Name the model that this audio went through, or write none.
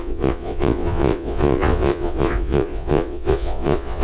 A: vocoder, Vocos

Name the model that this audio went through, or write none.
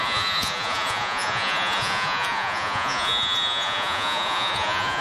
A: vocoder, Vocos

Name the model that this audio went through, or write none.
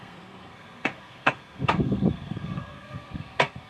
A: codec, SNAC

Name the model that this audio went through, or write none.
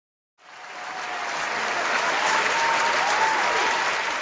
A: none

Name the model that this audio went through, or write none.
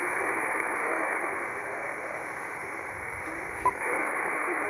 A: autoencoder, DAC-VAE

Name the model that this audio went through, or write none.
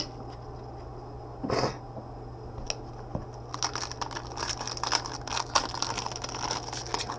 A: none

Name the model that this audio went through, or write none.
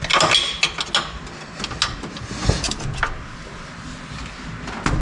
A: none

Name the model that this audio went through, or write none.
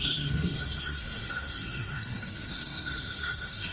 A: codec, SNAC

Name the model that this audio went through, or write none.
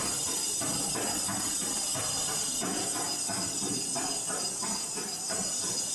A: vocoder, BigVGAN v2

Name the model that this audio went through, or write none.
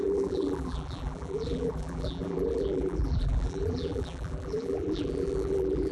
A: vocoder, BigVGAN v2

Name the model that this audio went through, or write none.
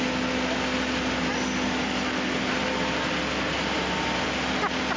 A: none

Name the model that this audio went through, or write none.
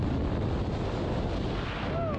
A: none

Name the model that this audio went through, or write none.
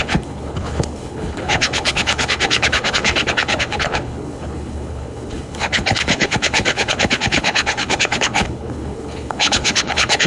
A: codec, HILCodec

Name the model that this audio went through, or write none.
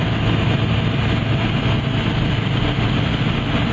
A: none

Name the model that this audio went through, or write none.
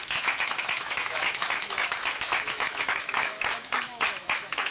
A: autoencoder, DAC-VAE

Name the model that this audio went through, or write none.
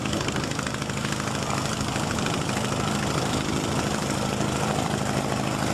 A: vocoder, BigVGAN v2